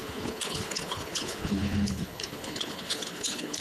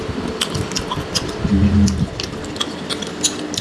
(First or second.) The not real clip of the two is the first